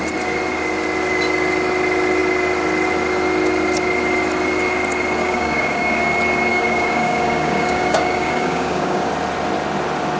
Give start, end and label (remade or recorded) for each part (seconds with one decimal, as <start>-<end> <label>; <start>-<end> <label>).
0.0-5.2 recorded; 5.2-6.0 remade; 6.0-6.5 recorded; 6.5-9.1 remade; 9.1-10.2 recorded